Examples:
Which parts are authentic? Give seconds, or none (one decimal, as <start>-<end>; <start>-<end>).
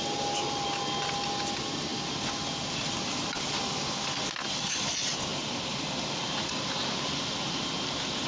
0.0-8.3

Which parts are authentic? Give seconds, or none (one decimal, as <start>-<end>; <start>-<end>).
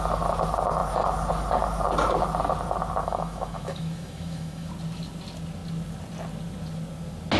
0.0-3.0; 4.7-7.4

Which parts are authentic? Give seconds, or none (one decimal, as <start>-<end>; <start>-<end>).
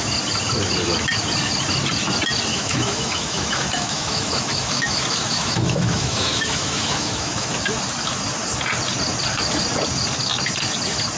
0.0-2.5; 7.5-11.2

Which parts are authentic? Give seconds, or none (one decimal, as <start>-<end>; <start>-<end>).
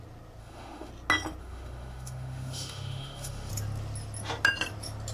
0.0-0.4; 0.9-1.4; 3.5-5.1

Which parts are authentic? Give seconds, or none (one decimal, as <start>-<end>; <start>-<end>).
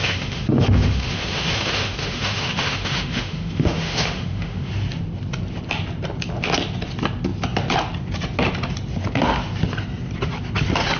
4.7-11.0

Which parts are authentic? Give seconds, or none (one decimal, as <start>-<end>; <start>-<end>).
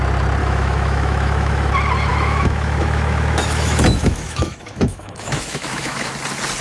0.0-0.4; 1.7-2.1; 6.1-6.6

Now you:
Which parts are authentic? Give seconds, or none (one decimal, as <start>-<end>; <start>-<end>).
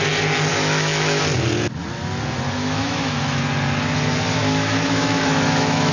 0.0-0.5; 1.2-2.6; 3.4-4.4